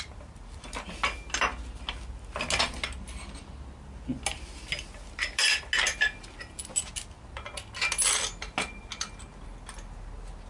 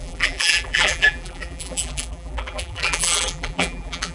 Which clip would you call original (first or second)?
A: first